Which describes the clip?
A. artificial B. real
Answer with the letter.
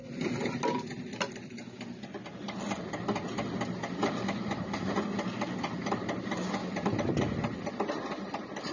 B